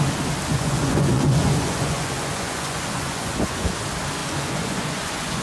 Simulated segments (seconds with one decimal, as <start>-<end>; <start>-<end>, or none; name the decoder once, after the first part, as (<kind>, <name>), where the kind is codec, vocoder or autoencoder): 0.5-3.7 (vocoder, Vocos); 4.2-5.4